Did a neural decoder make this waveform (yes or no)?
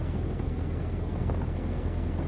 yes